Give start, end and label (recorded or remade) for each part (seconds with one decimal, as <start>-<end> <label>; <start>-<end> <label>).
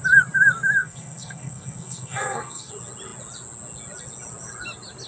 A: 0.0-0.8 recorded; 0.8-2.7 remade; 2.7-5.1 recorded